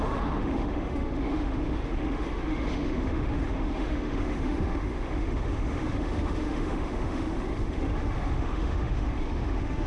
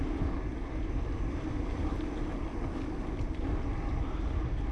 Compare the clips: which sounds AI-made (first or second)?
first